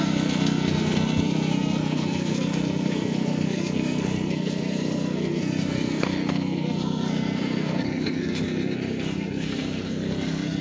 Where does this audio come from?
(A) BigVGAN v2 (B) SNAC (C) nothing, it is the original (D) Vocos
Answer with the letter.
B